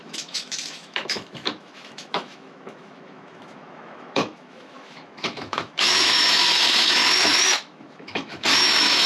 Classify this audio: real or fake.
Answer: fake